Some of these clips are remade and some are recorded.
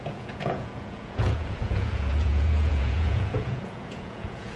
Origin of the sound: remade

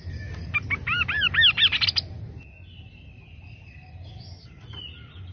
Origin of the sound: recorded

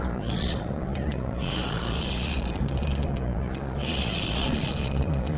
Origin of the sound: remade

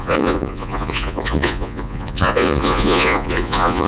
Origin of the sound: remade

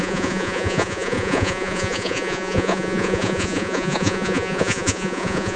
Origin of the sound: remade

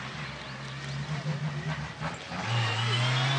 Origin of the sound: recorded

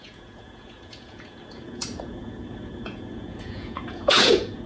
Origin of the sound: remade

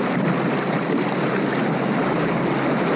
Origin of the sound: recorded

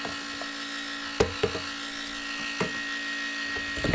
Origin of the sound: recorded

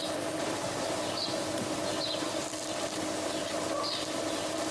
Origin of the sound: recorded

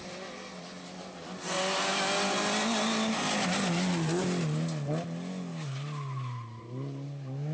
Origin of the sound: recorded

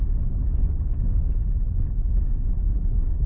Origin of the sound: recorded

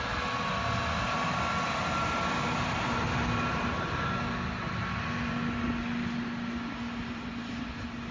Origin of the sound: recorded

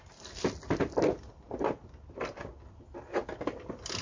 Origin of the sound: recorded